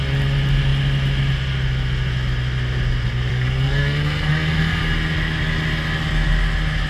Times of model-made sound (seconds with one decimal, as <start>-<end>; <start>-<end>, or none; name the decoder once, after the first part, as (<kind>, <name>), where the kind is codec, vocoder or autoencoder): 3.3-4.8 (codec, SNAC)